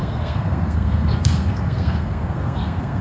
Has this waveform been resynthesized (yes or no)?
yes